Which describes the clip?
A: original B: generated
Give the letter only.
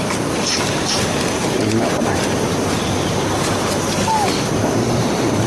B